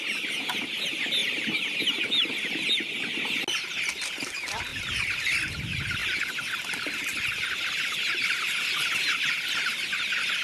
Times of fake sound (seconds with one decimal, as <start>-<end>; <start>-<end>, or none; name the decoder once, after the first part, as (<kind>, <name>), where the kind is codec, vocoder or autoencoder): none